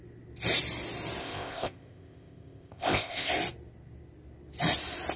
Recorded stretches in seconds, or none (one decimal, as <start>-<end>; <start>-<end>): 0.0-1.2; 3.3-5.2